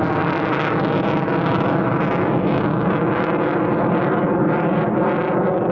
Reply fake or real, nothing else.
real